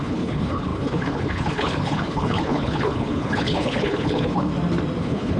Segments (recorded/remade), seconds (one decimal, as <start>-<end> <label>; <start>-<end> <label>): 0.0-4.5 remade; 4.5-5.0 recorded; 5.0-5.4 remade